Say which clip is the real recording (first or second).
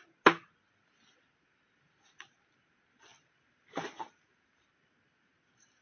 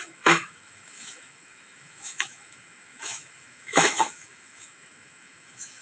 first